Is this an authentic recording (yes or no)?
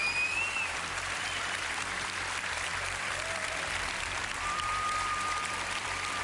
no